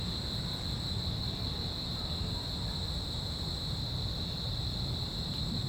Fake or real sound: real